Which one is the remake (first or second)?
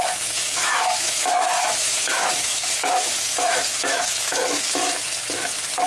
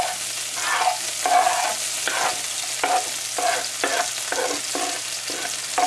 first